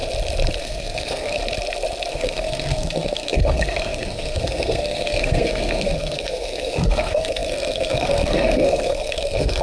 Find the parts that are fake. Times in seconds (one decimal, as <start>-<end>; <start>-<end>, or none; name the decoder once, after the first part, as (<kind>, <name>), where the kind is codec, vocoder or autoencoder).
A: 0.6-1.4 (codec, SNAC); 2.1-9.6

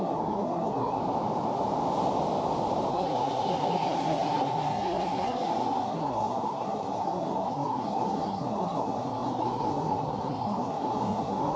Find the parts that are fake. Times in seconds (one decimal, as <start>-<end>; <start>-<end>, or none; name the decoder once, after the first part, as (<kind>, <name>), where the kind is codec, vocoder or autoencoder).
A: 0.0-1.0 (codec, SNAC); 2.9-11.6

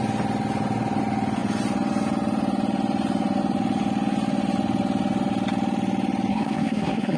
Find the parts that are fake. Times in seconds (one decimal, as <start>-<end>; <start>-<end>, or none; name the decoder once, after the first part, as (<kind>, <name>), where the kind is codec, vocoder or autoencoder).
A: 6.3-7.2 (codec, SNAC)

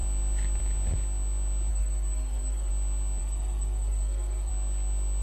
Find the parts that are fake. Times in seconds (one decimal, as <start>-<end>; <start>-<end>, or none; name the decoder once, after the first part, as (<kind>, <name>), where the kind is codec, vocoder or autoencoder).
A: 1.7-2.7 (codec, SNAC); 3.2-4.5